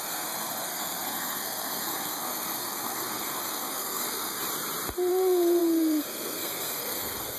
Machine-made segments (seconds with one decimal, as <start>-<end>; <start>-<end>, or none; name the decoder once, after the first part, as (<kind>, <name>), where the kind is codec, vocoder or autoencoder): 0.0-4.4 (codec, SNAC); 5.1-7.4